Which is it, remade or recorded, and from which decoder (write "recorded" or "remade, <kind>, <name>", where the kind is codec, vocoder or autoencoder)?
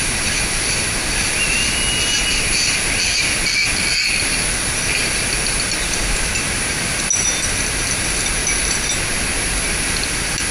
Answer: recorded